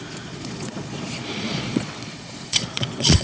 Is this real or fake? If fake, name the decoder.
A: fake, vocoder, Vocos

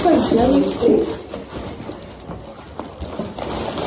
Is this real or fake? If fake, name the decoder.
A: real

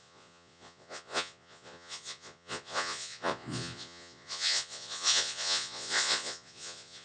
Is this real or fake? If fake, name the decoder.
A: fake, vocoder, Vocos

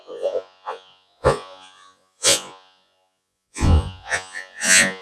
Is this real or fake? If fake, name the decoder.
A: fake, vocoder, Vocos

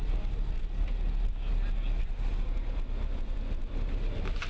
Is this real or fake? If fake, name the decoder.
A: real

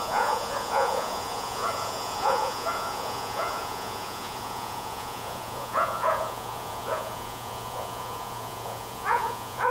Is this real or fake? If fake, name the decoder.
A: fake, vocoder, Vocos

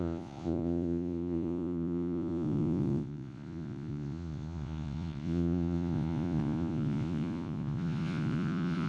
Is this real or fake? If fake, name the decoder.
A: fake, vocoder, Vocos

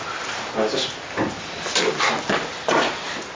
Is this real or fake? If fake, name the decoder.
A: real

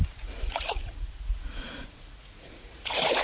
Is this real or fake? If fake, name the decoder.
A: fake, vocoder, Vocos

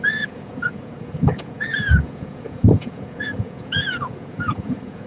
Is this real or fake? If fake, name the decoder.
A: fake, vocoder, Vocos